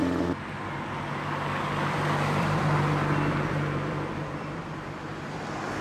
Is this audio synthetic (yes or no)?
no